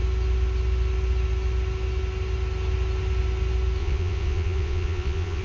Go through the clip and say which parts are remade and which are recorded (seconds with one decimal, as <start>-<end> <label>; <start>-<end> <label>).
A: 0.0-3.8 recorded; 3.8-5.4 remade